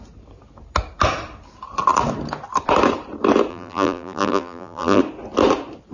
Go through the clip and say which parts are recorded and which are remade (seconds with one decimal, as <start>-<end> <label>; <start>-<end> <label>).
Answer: 0.0-3.5 recorded; 3.5-5.0 remade; 5.0-5.9 recorded